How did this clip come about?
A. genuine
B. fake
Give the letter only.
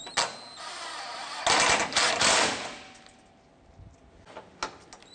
A